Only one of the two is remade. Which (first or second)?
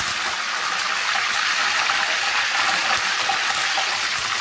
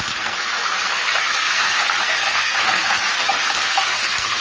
second